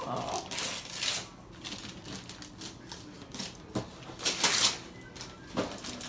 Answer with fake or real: real